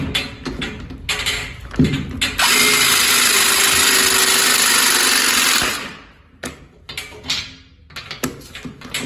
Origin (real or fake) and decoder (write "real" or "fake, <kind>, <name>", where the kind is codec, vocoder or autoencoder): real